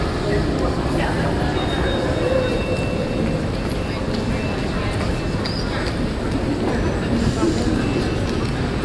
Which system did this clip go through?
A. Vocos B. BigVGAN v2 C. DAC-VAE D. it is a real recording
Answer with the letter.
D